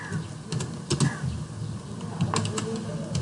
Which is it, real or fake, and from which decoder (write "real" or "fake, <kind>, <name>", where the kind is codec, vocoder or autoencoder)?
real